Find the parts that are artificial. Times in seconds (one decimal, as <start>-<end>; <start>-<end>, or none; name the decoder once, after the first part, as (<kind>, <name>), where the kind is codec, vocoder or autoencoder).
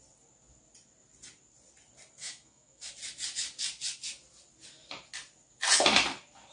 2.2-2.9 (autoencoder, DAC-VAE)